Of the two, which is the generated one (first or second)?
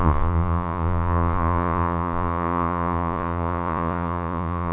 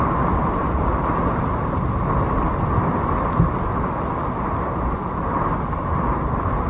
first